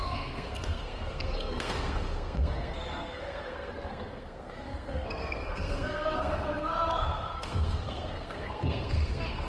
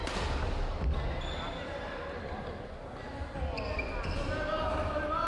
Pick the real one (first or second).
second